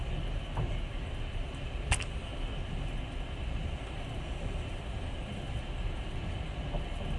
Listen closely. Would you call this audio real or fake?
real